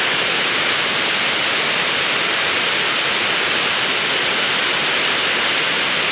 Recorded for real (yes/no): yes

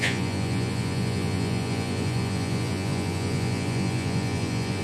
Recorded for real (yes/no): no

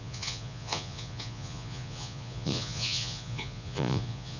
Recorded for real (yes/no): no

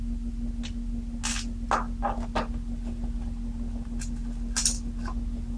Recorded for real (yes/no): yes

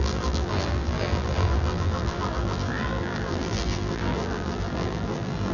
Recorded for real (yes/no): no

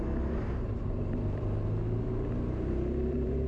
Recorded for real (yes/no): no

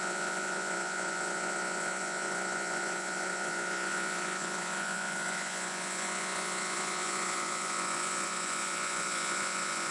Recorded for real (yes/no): no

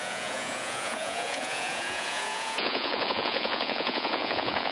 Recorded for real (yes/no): no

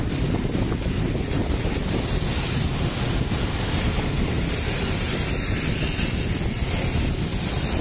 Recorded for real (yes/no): yes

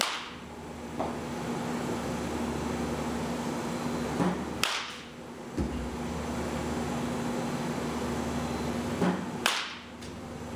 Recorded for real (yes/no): yes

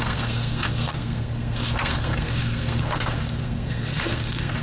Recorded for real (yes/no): no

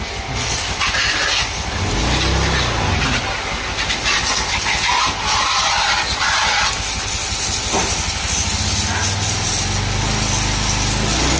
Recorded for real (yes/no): yes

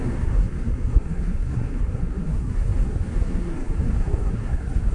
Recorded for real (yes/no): no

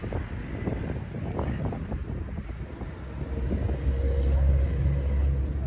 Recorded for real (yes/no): yes